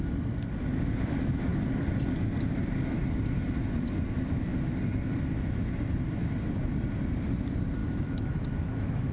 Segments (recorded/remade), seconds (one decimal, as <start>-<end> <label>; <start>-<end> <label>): 0.0-7.8 recorded; 7.8-9.1 remade